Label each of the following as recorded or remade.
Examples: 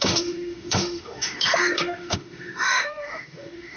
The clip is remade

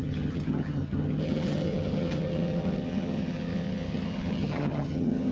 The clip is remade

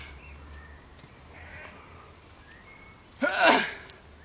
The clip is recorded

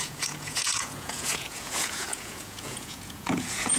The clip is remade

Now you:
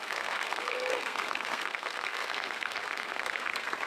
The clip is remade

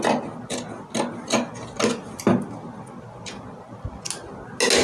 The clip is recorded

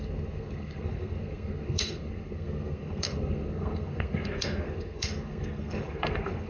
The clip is remade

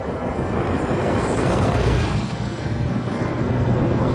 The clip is remade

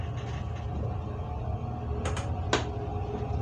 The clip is recorded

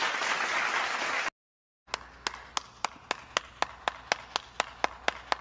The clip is recorded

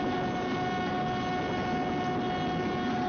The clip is recorded